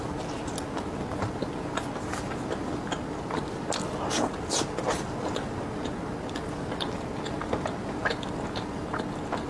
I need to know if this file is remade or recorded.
recorded